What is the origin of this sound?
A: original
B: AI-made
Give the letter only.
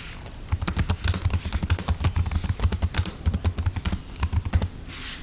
A